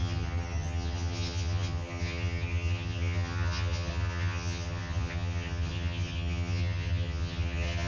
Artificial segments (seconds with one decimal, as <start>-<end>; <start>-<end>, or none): 0.0-7.9